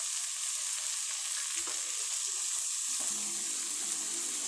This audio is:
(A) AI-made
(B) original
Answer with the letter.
B